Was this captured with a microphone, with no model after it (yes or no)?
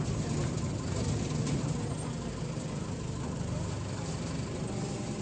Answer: yes